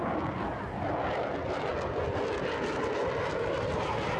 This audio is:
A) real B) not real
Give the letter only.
A